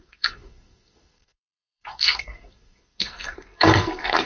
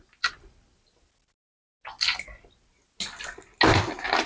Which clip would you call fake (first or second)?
first